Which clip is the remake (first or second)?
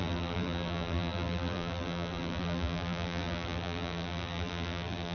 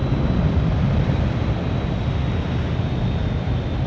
first